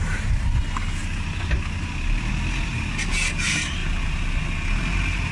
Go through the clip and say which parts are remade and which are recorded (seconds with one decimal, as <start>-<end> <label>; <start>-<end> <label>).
0.0-5.3 recorded